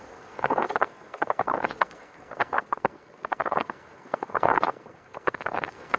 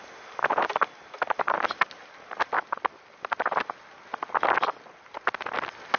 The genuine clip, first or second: second